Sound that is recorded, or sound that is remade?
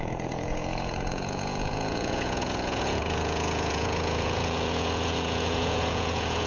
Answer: remade